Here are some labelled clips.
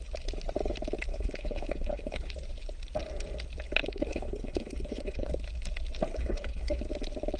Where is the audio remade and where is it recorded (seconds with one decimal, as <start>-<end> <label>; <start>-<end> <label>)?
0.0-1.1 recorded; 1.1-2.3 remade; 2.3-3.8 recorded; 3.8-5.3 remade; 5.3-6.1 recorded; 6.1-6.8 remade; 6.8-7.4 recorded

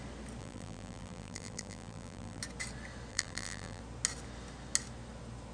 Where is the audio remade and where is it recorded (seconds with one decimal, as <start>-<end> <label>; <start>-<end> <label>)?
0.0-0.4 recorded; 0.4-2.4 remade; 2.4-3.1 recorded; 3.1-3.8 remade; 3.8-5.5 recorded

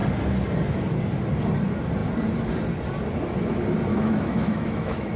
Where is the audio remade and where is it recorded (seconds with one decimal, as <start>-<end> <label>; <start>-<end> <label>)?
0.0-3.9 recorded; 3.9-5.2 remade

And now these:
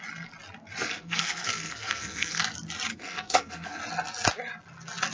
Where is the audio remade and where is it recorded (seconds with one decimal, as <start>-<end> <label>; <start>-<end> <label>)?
0.0-0.9 recorded; 0.9-2.4 remade; 2.4-2.9 recorded; 2.9-3.8 remade; 3.8-5.1 recorded

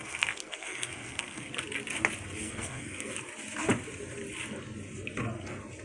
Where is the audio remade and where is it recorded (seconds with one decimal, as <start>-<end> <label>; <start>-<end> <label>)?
0.0-1.5 remade; 1.5-2.4 recorded; 2.4-3.1 remade; 3.1-5.8 recorded

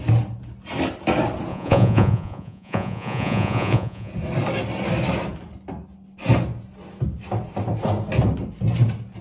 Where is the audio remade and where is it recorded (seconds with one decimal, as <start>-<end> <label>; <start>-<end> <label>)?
0.0-1.5 recorded; 1.5-4.1 remade; 4.1-9.2 recorded